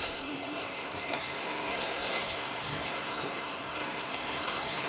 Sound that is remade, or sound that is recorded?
remade